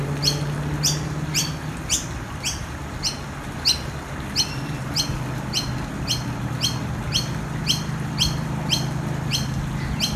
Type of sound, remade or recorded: recorded